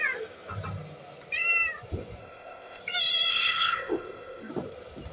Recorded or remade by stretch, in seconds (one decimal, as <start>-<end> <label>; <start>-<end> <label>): 0.0-2.2 recorded; 2.2-2.8 remade; 2.8-3.3 recorded; 3.3-4.5 remade; 4.5-5.1 recorded